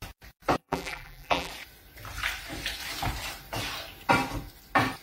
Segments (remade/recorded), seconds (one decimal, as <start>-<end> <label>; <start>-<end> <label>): 0.0-0.6 recorded; 0.6-1.5 remade; 1.5-5.0 recorded